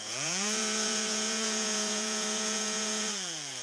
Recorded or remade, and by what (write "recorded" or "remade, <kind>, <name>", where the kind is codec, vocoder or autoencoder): remade, vocoder, Vocos